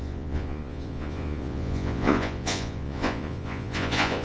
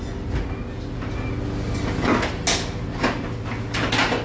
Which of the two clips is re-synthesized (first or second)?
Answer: first